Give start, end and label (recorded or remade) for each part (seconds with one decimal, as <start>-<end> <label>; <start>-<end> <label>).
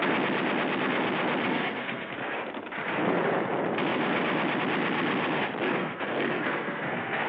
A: 0.0-1.5 recorded; 1.5-2.1 remade; 2.1-5.8 recorded; 5.8-7.3 remade